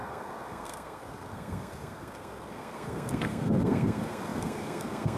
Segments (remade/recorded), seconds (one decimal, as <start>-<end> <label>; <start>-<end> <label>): 0.0-5.2 remade